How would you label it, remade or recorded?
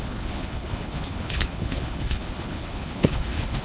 remade